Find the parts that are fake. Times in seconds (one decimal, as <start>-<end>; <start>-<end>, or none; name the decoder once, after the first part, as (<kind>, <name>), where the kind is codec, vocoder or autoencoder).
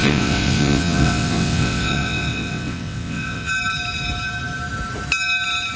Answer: 0.0-3.5 (vocoder, WaveNeXt)